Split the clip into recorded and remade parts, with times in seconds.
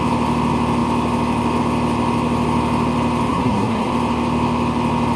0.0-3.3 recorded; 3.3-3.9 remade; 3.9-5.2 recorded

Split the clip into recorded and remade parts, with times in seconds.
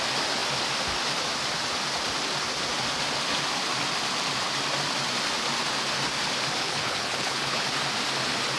0.0-6.6 recorded; 6.6-7.6 remade; 7.6-8.6 recorded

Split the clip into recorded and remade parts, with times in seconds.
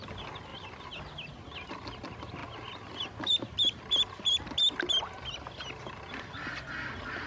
0.0-7.3 recorded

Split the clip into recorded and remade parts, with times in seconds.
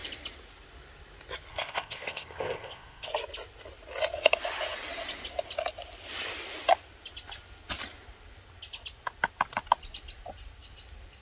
0.0-1.5 recorded; 1.5-3.1 remade; 3.1-11.2 recorded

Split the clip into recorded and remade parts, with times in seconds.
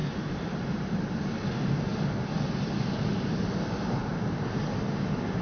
0.0-0.7 remade; 0.7-4.1 recorded; 4.1-4.6 remade; 4.6-5.4 recorded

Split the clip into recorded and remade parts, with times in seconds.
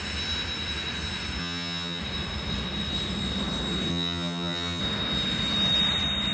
0.0-1.4 recorded; 1.4-2.0 remade; 2.0-3.9 recorded; 3.9-4.8 remade; 4.8-6.3 recorded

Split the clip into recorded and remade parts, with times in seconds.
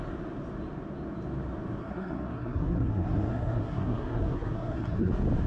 0.0-1.8 recorded; 1.8-5.1 remade; 5.1-5.5 recorded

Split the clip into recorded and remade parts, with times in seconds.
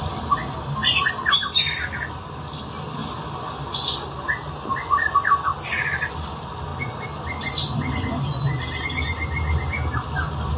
0.0-10.6 recorded